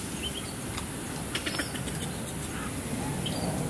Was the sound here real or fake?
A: real